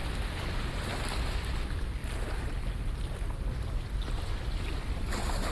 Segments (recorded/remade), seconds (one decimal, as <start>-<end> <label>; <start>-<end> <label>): 0.0-5.5 recorded